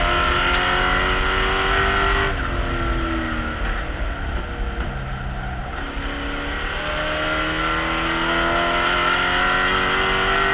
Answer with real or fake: real